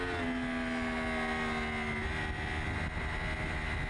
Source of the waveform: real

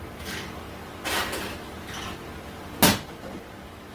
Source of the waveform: real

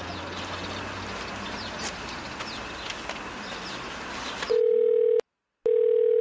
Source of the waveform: real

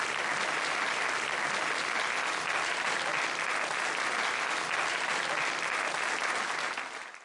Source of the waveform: real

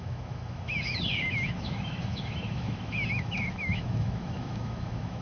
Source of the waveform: fake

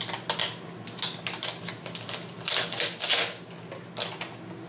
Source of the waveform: real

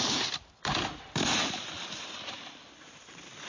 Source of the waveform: real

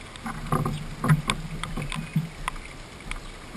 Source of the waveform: real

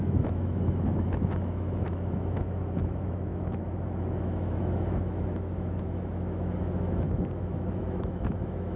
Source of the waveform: fake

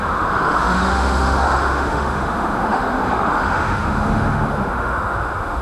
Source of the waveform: fake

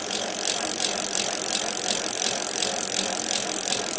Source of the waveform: real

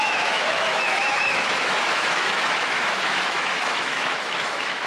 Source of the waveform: fake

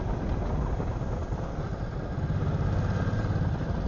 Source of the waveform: real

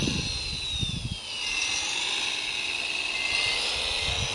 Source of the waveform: real